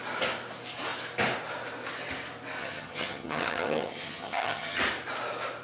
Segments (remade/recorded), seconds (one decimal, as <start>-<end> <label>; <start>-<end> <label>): 0.0-2.6 recorded; 2.6-4.8 remade; 4.8-5.6 recorded